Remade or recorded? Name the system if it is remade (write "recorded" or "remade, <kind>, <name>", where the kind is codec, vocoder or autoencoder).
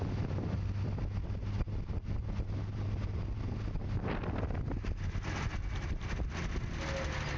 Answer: recorded